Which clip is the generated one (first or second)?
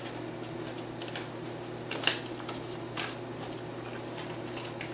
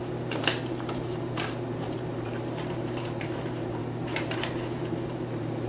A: second